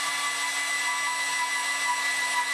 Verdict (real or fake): real